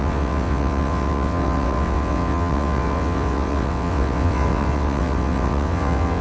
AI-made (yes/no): yes